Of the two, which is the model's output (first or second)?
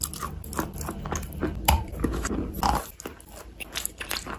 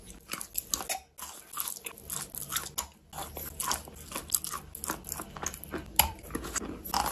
first